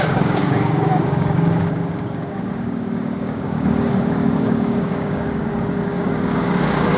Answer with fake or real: fake